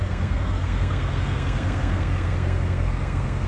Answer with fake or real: fake